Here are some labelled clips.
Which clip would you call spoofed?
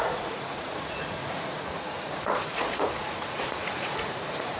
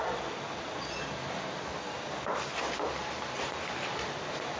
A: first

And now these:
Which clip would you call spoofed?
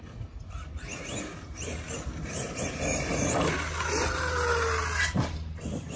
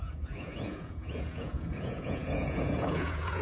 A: second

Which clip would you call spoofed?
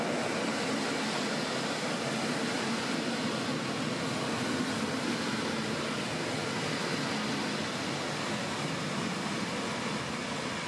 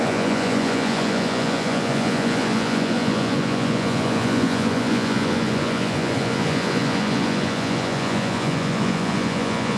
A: second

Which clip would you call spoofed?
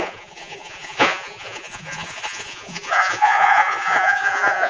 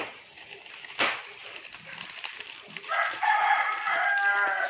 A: first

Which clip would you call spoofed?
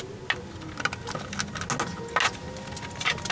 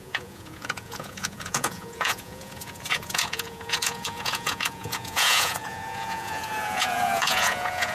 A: second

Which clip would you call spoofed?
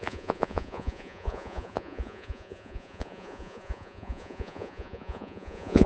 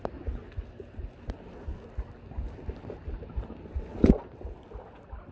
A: first